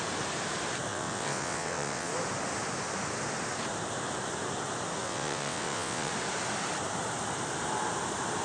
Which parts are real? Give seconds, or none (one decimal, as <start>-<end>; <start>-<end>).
0.0-0.9; 2.1-5.0; 6.1-8.4